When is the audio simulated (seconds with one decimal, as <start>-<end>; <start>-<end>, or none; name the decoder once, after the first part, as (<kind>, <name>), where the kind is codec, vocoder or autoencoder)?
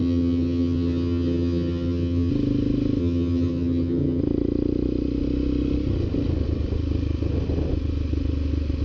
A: 0.0-2.3 (vocoder, HiFi-GAN); 3.0-4.2